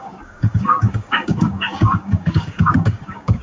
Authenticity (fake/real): fake